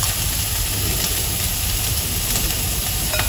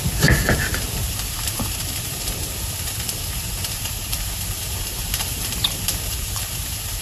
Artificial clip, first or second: second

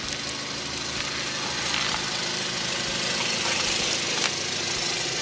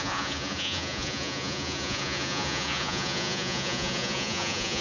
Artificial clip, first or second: second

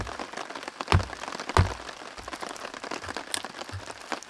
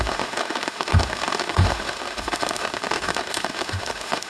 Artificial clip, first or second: second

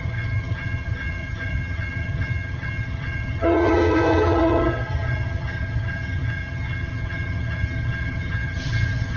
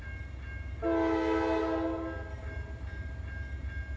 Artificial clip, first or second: first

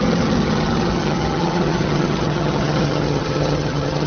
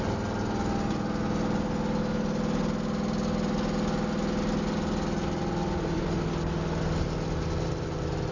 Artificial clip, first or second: first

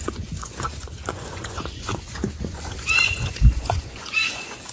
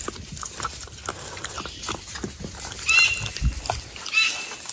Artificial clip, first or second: first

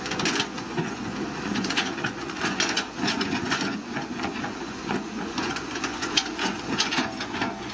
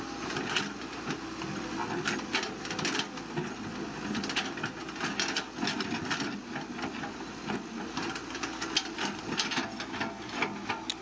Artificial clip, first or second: first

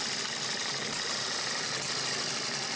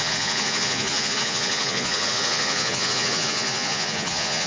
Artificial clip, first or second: second